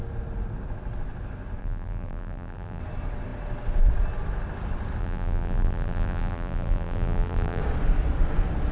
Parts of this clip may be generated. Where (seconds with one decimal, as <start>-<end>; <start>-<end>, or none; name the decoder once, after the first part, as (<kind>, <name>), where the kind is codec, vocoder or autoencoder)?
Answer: 1.6-2.8 (vocoder, BigVGAN v2); 5.0-7.6